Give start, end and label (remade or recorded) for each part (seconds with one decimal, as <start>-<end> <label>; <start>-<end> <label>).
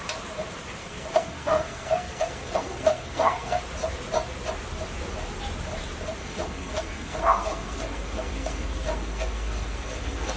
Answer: 0.0-0.8 recorded; 0.8-3.6 remade; 3.6-6.2 recorded; 6.2-10.4 remade